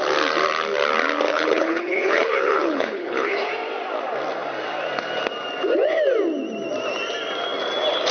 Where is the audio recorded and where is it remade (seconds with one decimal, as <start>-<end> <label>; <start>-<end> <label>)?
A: 0.0-1.3 recorded; 1.3-3.5 remade; 3.5-8.1 recorded

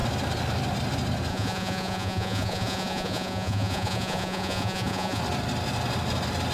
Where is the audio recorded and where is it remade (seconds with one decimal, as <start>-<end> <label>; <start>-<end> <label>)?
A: 0.0-1.3 recorded; 1.3-5.2 remade; 5.2-6.5 recorded

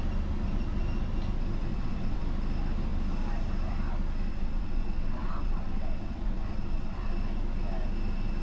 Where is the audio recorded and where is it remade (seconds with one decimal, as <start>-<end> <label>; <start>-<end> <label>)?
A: 0.0-1.7 recorded; 1.7-2.2 remade; 2.2-4.3 recorded; 4.3-7.1 remade; 7.1-8.4 recorded

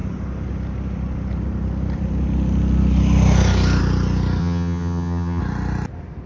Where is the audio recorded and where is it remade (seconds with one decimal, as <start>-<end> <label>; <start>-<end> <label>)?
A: 0.0-4.4 recorded; 4.4-5.4 remade; 5.4-6.3 recorded

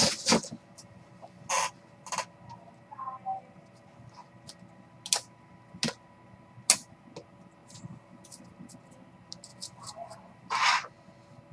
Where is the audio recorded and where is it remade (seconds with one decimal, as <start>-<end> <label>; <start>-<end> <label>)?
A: 0.0-11.5 recorded

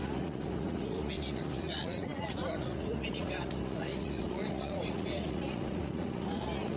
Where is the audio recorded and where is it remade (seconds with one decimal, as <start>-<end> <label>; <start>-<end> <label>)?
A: 0.0-6.8 remade